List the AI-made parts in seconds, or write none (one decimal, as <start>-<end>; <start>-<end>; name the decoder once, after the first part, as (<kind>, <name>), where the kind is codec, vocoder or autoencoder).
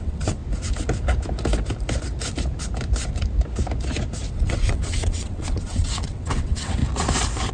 0.0-0.4 (vocoder, WaveNeXt); 4.3-6.8